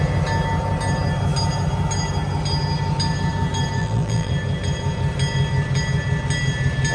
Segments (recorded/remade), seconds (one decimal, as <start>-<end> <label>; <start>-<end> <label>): 0.0-3.8 recorded; 3.8-4.3 remade; 4.3-6.9 recorded